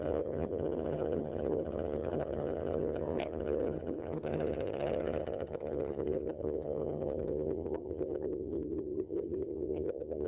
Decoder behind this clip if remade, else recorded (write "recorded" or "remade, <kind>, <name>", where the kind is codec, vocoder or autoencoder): remade, vocoder, HiFi-GAN